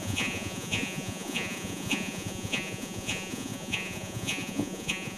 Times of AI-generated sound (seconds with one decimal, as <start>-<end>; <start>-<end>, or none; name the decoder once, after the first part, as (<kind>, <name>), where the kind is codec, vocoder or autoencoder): 0.0-5.2 (vocoder, Vocos)